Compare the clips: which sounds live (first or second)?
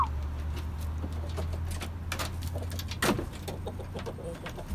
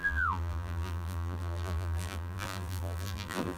first